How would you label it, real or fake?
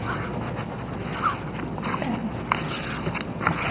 real